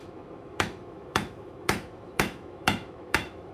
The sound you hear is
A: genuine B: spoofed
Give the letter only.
B